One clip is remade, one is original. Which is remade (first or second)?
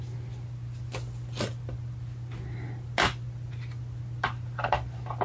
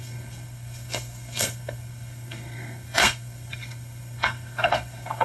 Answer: second